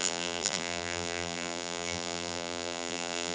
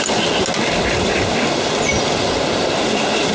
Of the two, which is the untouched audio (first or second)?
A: second